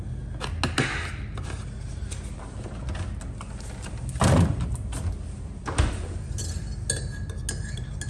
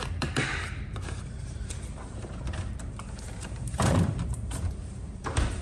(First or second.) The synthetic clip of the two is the second